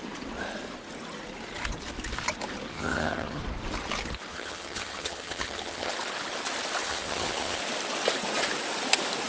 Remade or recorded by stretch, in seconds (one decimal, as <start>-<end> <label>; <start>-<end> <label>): 0.0-2.7 recorded; 2.7-3.4 remade; 3.4-4.3 recorded; 4.3-5.9 remade; 5.9-6.8 recorded; 6.8-7.6 remade; 7.6-9.3 recorded